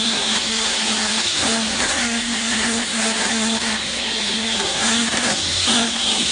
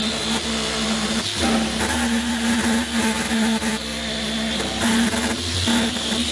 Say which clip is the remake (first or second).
first